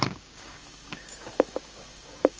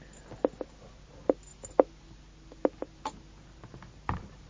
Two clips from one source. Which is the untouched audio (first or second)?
second